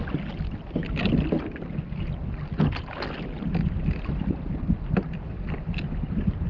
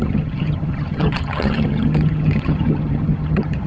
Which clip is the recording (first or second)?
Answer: first